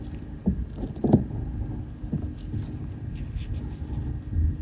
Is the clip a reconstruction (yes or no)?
no